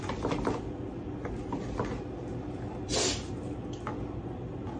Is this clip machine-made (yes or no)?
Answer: no